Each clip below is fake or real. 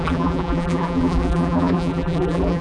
fake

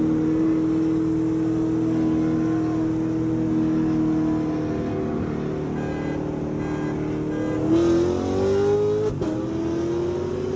real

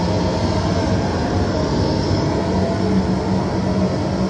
real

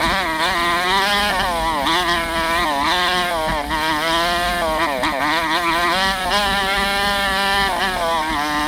real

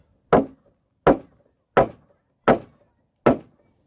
real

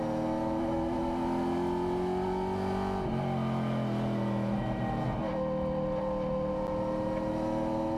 real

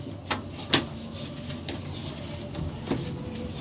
real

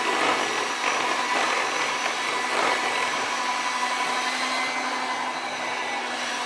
real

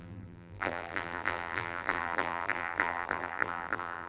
fake